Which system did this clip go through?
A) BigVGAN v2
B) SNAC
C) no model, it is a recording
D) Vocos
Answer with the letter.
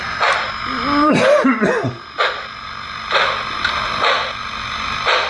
C